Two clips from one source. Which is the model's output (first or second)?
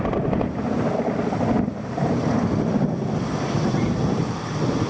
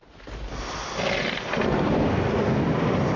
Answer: first